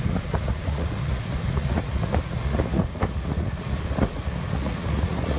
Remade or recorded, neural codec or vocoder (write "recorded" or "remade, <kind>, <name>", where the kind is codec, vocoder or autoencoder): remade, vocoder, Vocos